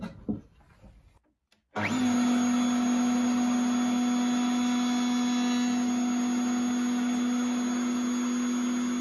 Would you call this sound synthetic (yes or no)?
no